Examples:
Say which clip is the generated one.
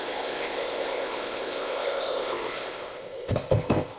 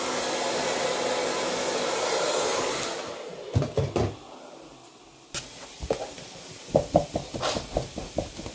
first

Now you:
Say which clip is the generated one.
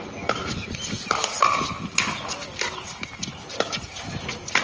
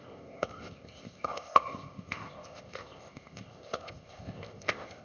second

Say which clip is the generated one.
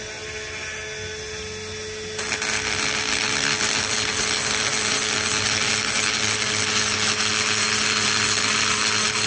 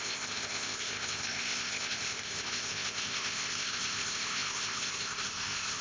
second